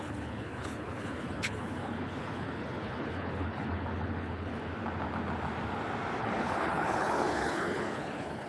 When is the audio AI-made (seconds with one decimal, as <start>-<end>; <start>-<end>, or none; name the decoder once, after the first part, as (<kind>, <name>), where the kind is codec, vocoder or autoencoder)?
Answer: 0.0-4.5 (codec, HILCodec); 6.2-8.5